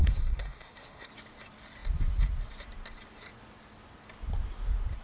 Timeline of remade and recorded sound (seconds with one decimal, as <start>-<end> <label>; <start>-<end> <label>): 0.0-1.1 remade; 1.1-5.0 recorded